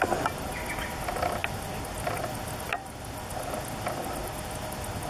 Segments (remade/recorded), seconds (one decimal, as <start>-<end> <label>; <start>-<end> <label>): 0.0-5.1 recorded